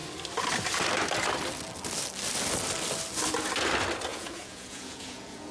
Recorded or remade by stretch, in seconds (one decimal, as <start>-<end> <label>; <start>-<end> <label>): 0.0-4.1 recorded; 4.1-5.5 remade